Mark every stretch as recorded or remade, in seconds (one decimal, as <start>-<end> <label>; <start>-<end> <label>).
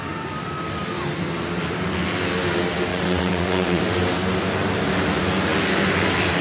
0.0-2.9 recorded; 2.9-3.8 remade; 3.8-6.4 recorded